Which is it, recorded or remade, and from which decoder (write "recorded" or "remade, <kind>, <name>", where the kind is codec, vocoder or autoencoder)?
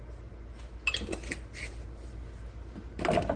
recorded